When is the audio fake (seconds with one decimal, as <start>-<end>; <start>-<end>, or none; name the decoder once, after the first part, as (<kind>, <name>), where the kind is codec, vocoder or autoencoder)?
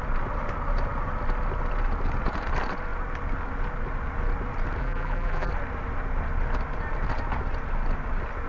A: 4.8-5.5 (vocoder, BigVGAN v2)